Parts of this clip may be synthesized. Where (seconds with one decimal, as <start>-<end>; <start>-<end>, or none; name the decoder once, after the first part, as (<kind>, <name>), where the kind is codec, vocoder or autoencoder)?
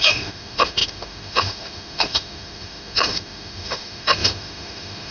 0.0-5.1 (autoencoder, DAC-VAE)